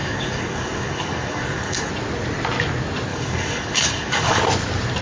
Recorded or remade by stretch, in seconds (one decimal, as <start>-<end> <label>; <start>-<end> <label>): 0.0-1.9 remade; 1.9-3.1 recorded; 3.1-4.4 remade; 4.4-5.0 recorded

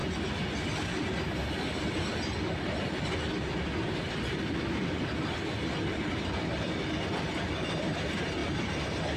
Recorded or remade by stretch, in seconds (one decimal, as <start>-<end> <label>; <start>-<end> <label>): 0.0-9.2 recorded

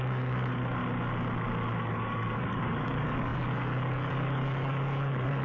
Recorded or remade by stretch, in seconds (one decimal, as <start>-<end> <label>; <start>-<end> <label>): 0.0-0.8 remade; 0.8-1.8 recorded; 1.8-5.4 remade

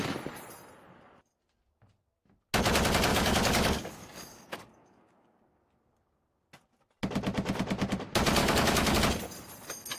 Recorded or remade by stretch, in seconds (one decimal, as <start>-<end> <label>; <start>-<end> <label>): 0.0-3.1 recorded; 3.1-5.4 remade; 5.4-8.4 recorded; 8.4-9.0 remade; 9.0-10.0 recorded

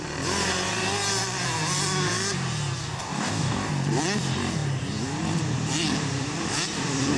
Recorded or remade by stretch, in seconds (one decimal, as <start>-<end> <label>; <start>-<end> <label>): 0.0-2.8 recorded; 2.8-3.7 remade; 3.7-7.2 recorded

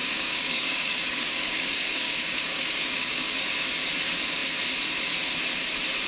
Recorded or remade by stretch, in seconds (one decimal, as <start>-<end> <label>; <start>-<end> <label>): 0.0-3.3 remade; 3.3-6.1 recorded

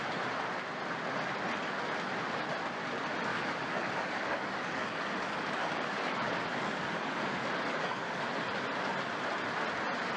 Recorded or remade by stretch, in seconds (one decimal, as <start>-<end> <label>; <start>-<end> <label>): 0.0-3.3 recorded; 3.3-8.4 remade; 8.4-10.2 recorded

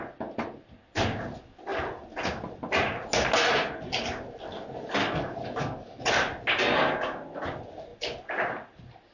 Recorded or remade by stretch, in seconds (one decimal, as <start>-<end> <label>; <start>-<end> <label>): 0.0-5.0 recorded; 5.0-6.1 remade; 6.1-9.1 recorded